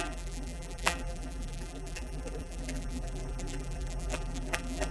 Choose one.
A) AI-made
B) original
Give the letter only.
A